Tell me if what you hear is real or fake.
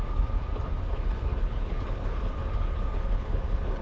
fake